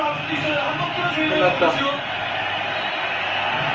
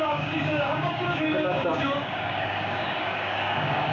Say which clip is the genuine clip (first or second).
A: first